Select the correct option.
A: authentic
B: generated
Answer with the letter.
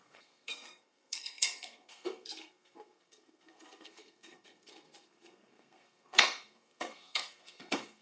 B